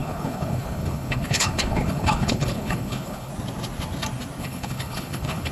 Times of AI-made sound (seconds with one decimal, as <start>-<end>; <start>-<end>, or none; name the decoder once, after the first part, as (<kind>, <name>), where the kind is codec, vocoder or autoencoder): 0.0-3.3 (codec, HILCodec); 4.4-5.5